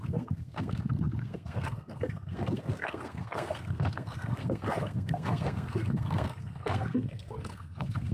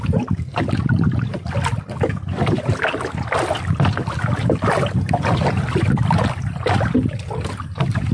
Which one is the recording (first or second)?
second